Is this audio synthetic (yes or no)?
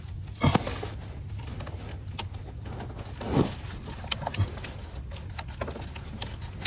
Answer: no